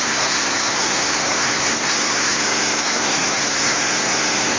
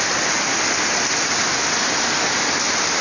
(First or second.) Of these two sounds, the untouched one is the second